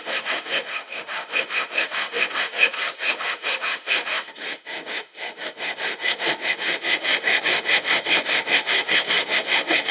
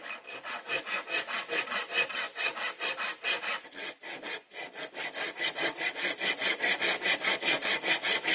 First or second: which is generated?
first